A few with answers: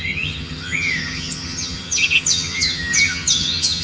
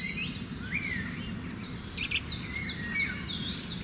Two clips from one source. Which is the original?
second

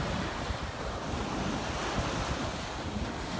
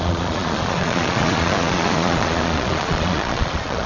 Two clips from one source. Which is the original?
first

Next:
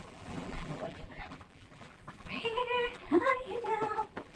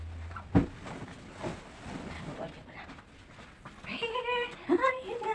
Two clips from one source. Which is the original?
second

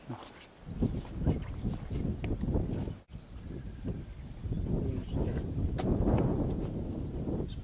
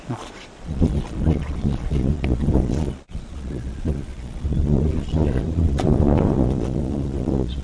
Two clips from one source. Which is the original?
first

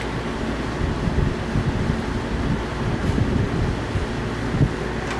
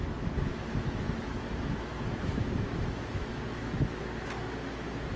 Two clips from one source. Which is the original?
first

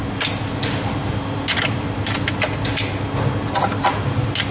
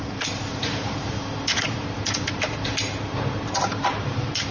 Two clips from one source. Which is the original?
first